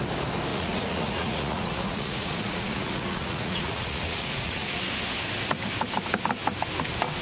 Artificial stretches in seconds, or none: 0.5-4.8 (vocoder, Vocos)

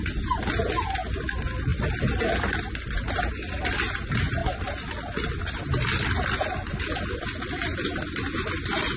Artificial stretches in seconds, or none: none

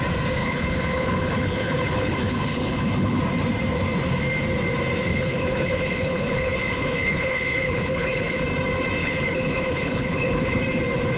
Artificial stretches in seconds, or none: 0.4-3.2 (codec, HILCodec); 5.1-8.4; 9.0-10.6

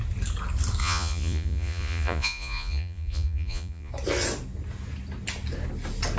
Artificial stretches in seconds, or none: 0.8-3.9 (vocoder, Vocos)

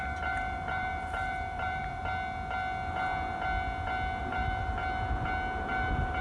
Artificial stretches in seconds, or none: 0.0-2.0 (vocoder, BigVGAN v2); 4.2-4.8; 5.6-6.2

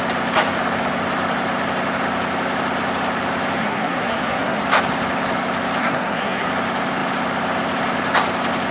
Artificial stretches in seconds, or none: 3.6-4.6 (codec, SNAC); 5.8-6.5

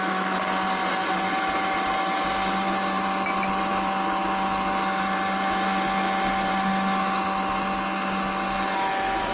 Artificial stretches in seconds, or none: none